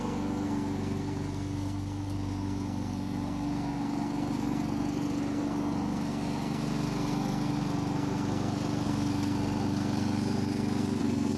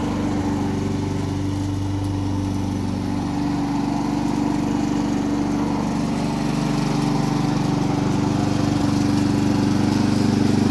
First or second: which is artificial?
first